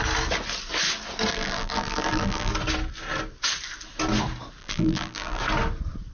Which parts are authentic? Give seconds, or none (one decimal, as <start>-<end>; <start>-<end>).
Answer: 0.0-1.3; 2.5-4.6; 5.4-6.1